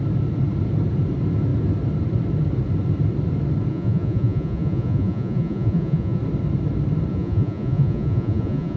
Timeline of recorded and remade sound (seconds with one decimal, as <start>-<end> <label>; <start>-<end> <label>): 0.0-3.7 recorded; 3.7-6.2 remade; 6.2-7.1 recorded; 7.1-8.8 remade